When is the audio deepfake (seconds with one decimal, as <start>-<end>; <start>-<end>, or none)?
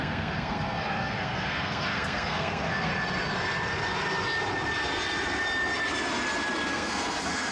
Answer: 0.0-2.9; 6.7-7.5